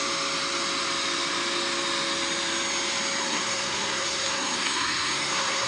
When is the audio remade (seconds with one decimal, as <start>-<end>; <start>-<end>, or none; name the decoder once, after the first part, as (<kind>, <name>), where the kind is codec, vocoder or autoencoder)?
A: 3.2-5.7 (codec, SNAC)